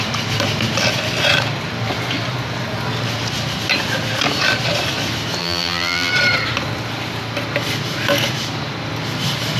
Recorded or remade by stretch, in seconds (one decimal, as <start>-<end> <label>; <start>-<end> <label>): 0.0-5.4 recorded; 5.4-6.1 remade; 6.1-9.6 recorded